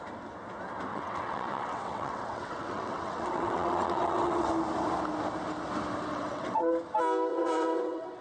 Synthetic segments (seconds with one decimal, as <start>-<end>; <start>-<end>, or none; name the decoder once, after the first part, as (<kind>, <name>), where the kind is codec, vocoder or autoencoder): 0.9-4.5 (vocoder, WaveNeXt); 6.1-6.7; 7.3-8.2